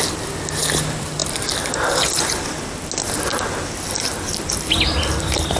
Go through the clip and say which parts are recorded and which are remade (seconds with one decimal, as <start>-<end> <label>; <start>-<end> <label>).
0.0-5.6 recorded